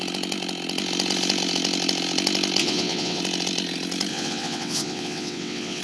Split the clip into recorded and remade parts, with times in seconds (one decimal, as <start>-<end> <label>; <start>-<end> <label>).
0.0-2.6 recorded; 2.6-3.2 remade; 3.2-4.1 recorded; 4.1-5.8 remade